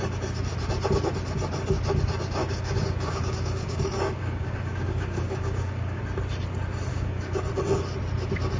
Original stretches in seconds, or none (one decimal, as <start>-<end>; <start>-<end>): 0.0-2.4; 6.0-6.9; 7.5-8.6